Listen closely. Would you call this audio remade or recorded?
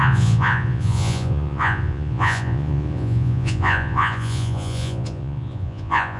remade